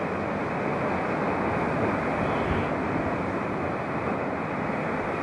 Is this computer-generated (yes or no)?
no